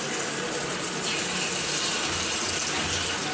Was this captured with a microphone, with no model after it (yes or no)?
yes